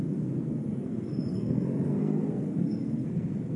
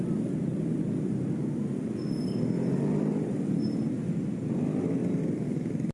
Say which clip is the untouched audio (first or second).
second